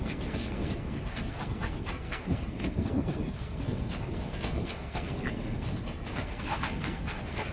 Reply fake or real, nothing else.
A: fake